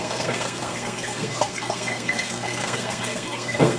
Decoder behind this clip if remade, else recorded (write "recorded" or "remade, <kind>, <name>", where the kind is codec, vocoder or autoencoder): remade, codec, SNAC